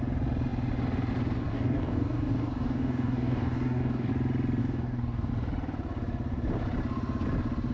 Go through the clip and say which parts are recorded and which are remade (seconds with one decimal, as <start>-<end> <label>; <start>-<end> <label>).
0.0-1.5 recorded; 1.5-4.1 remade; 4.1-4.6 recorded; 4.6-5.3 remade; 5.3-7.7 recorded

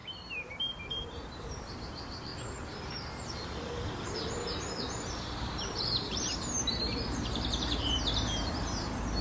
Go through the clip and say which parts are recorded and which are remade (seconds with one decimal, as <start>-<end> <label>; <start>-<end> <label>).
0.0-0.9 recorded; 0.9-2.3 remade; 2.3-4.7 recorded; 4.7-9.2 remade